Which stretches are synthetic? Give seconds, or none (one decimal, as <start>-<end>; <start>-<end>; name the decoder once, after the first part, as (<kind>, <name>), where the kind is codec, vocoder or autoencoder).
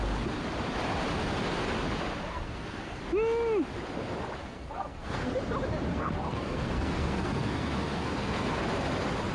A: 2.2-3.0 (codec, SNAC); 4.4-5.3; 5.9-8.6